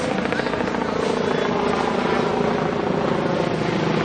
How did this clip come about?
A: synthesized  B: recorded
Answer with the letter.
B